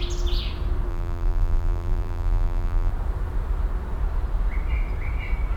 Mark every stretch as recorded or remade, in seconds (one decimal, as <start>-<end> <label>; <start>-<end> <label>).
0.0-0.9 recorded; 0.9-2.9 remade; 2.9-5.6 recorded